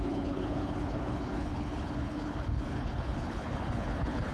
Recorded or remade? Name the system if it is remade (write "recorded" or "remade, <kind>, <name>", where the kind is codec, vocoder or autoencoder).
remade, codec, HILCodec